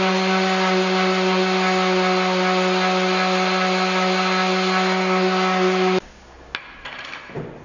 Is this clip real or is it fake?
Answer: real